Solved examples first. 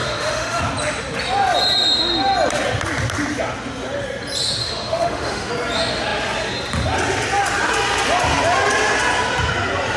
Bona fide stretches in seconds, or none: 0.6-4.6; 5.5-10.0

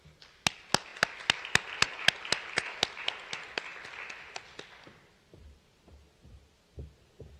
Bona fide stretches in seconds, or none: 0.0-3.7; 5.0-7.4